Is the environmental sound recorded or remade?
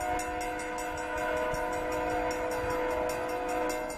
recorded